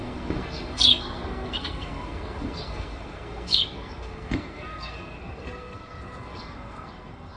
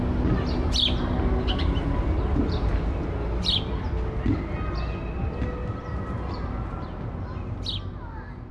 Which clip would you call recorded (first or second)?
second